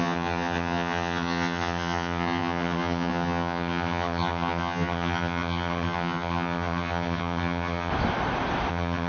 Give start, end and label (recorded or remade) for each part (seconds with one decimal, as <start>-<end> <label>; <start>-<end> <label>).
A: 0.0-7.9 remade; 7.9-8.7 recorded; 8.7-9.1 remade